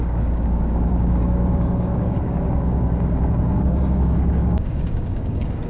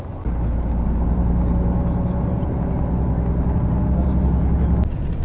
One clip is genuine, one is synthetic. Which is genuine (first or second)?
second